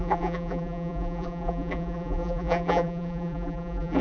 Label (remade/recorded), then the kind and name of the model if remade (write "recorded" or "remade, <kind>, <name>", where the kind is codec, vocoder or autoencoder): remade, vocoder, BigVGAN v2